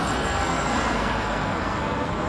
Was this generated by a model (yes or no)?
yes